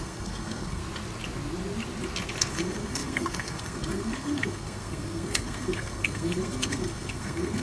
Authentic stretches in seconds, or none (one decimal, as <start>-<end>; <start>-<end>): 0.8-2.5